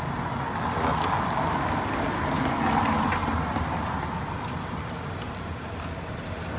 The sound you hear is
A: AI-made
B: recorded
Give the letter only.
B